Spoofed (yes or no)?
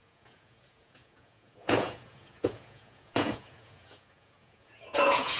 yes